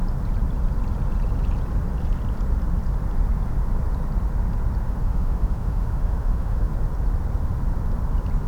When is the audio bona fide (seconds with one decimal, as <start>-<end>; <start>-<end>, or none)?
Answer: 0.0-5.0; 6.7-8.5